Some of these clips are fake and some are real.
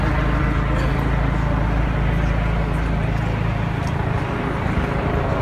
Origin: real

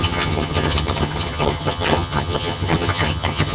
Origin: fake